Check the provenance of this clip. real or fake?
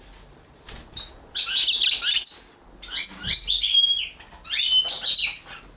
real